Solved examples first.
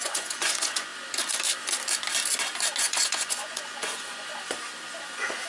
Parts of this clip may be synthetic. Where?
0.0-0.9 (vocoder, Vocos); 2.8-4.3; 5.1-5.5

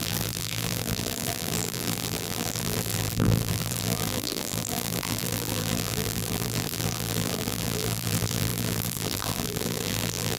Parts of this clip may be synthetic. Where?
0.0-10.4 (vocoder, BigVGAN v2)

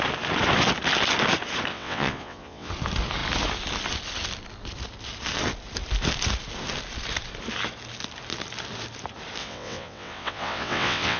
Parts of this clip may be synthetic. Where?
1.7-2.7 (vocoder, WaveNeXt); 9.4-11.2

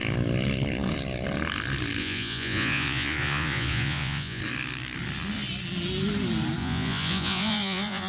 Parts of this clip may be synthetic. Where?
2.0-4.4 (vocoder, Vocos); 6.6-8.1

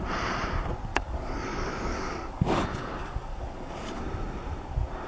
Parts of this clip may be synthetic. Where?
0.9-4.0 (codec, DAC)

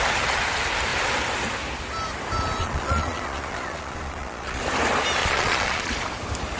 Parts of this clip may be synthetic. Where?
2.6-4.6 (vocoder, Vocos); 5.2-5.9